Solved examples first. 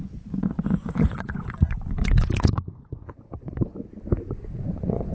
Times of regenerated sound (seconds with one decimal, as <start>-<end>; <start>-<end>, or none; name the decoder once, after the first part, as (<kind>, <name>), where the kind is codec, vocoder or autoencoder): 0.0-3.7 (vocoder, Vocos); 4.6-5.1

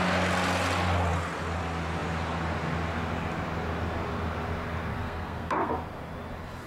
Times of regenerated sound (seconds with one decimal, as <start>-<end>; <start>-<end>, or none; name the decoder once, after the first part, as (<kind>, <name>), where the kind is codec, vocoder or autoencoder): 4.9-5.7 (codec, SNAC)

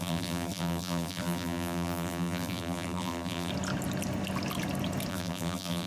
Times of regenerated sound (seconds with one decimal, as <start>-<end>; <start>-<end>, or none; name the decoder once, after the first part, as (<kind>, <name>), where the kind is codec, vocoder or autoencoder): 0.0-3.5 (vocoder, BigVGAN v2); 5.1-5.9